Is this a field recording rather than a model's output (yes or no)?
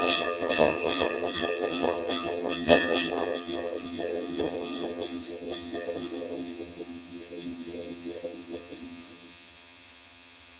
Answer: no